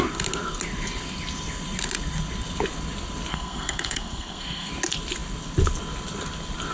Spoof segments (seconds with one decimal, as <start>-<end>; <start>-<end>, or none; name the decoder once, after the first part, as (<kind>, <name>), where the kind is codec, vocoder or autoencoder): 3.3-4.7 (codec, SNAC)